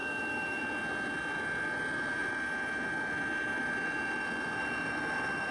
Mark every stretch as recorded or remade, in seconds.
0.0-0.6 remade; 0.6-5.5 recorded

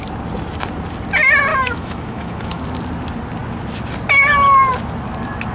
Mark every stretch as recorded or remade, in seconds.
0.0-1.5 recorded; 1.5-2.6 remade; 2.6-5.5 recorded

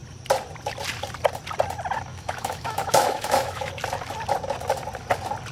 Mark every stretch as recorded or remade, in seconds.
0.0-2.1 recorded; 2.1-3.7 remade; 3.7-5.5 recorded